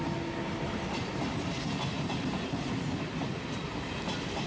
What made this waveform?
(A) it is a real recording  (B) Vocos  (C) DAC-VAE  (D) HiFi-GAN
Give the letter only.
A